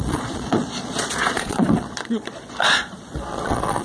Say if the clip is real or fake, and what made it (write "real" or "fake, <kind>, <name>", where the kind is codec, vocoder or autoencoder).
fake, vocoder, Vocos